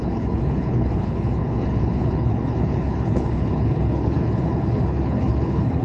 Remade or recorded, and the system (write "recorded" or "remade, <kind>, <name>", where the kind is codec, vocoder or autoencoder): remade, codec, HILCodec